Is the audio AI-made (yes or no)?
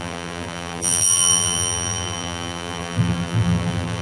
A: yes